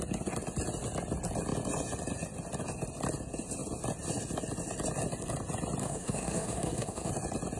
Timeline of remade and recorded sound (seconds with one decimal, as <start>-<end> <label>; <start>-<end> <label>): 0.0-5.8 recorded; 5.8-7.1 remade; 7.1-7.6 recorded